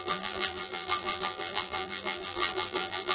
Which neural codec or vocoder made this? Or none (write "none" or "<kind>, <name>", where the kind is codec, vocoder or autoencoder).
vocoder, BigVGAN v2